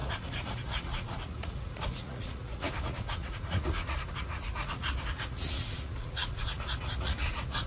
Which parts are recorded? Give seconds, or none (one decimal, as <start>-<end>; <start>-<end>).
none